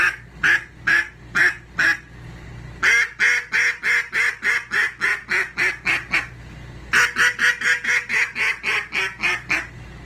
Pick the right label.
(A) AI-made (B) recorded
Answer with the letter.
B